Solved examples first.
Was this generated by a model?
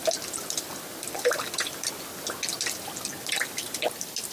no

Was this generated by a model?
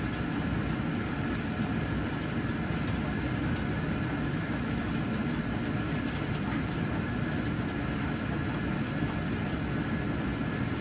no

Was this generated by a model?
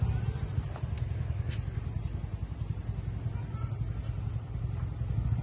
no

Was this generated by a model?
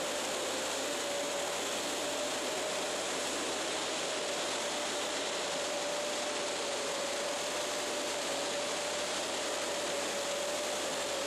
no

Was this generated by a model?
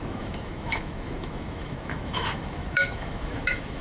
yes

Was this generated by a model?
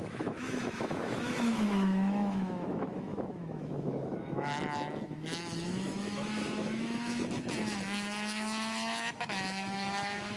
yes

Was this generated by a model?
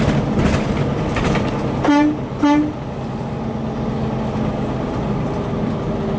no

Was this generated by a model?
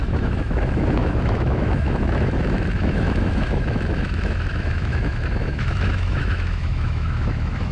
yes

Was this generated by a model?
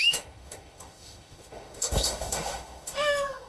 yes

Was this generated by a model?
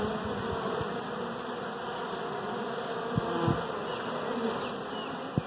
no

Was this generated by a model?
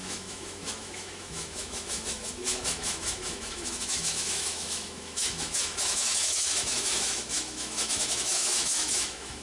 yes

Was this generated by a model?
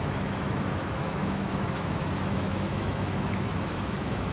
yes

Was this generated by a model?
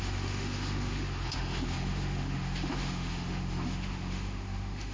yes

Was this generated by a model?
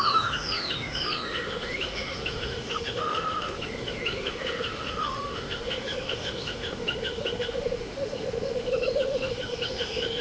yes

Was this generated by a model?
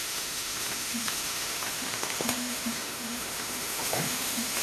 yes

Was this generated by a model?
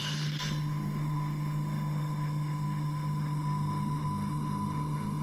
yes